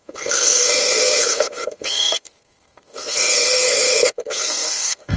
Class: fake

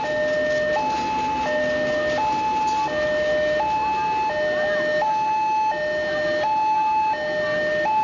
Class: real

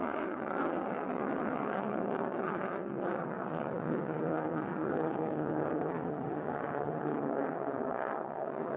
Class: fake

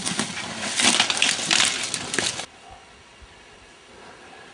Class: real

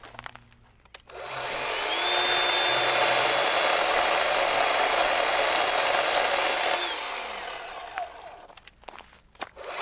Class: real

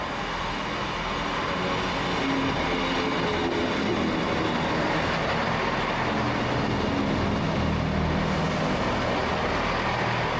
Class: real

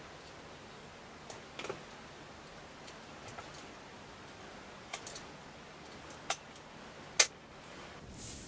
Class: real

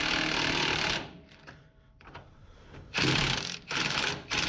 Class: fake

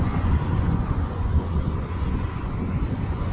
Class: fake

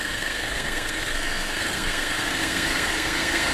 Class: fake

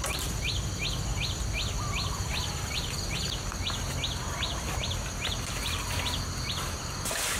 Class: real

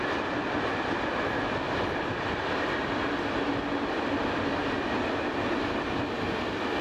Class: real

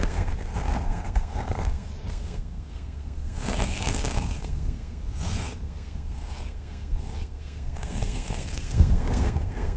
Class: fake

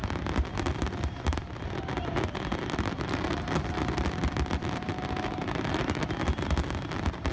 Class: fake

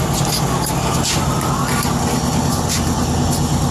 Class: real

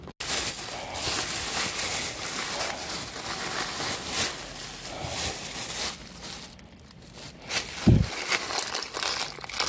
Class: real